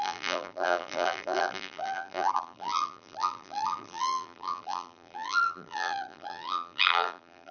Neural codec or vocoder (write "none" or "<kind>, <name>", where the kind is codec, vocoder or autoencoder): vocoder, BigVGAN v2